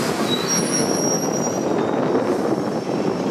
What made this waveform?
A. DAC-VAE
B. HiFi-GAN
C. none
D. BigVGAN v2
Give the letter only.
C